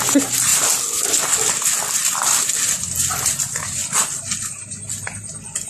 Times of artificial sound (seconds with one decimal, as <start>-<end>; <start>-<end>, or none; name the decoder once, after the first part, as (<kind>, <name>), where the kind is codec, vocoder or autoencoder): none